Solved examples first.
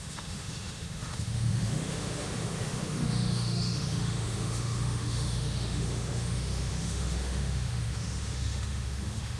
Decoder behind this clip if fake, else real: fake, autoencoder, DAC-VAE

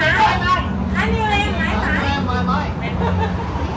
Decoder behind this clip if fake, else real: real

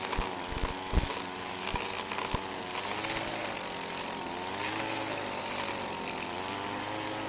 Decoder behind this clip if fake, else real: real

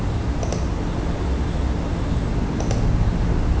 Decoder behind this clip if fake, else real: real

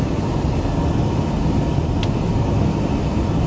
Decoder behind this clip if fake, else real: real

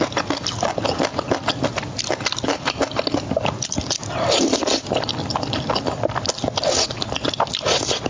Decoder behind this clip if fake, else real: real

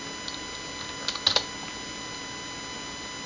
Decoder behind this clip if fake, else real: real